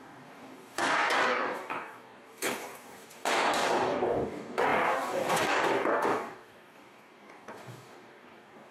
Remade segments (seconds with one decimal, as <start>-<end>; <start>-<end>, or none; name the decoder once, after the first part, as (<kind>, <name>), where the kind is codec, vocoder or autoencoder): 0.0-8.7 (codec, DAC)